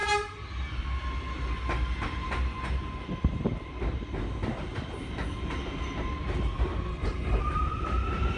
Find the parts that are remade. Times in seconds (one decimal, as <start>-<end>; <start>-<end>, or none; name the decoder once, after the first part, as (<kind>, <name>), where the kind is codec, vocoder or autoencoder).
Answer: 6.9-7.4 (codec, HILCodec)